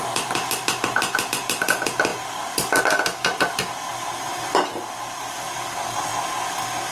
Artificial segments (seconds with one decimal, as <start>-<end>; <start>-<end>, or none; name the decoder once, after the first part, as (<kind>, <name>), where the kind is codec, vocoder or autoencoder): none